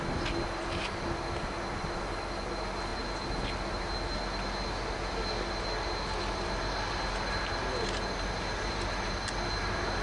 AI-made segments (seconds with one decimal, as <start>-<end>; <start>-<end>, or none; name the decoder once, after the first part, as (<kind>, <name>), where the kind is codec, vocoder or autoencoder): none